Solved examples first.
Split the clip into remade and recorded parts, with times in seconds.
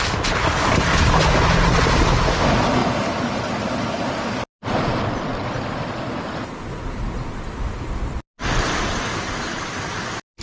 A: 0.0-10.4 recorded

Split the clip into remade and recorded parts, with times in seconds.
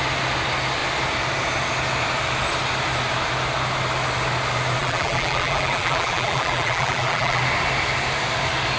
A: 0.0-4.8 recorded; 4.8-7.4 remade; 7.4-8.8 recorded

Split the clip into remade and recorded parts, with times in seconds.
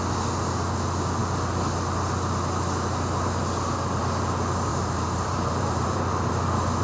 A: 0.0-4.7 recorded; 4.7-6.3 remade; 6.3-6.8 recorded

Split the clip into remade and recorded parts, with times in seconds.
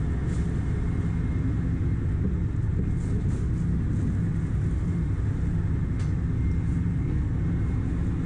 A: 0.0-6.9 recorded; 6.9-7.4 remade; 7.4-8.3 recorded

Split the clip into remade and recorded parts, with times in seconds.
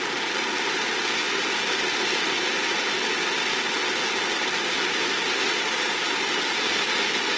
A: 0.0-5.4 recorded; 5.4-5.9 remade; 5.9-7.4 recorded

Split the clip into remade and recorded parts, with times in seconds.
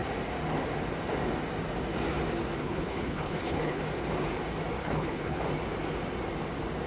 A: 0.0-2.6 recorded; 2.6-3.8 remade; 3.8-4.8 recorded; 4.8-5.4 remade; 5.4-6.9 recorded